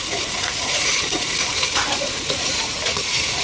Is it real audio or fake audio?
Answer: fake